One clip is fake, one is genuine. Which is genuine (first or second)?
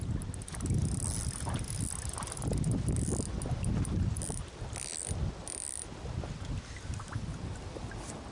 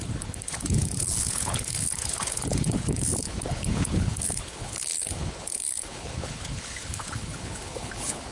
first